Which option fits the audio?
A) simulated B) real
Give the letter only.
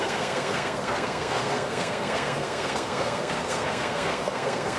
A